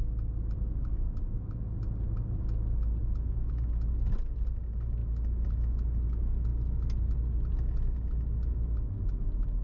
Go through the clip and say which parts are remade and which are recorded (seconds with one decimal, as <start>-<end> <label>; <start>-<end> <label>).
0.0-3.0 recorded; 3.0-3.9 remade; 3.9-9.6 recorded